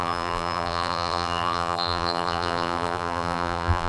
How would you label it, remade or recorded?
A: remade